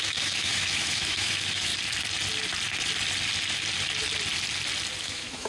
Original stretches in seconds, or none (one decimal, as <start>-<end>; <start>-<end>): 1.7-5.0